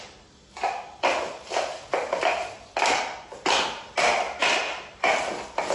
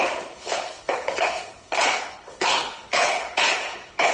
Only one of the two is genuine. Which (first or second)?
first